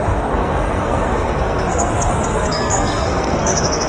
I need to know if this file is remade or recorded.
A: remade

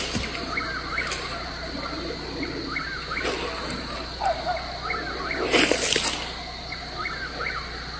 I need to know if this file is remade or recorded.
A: recorded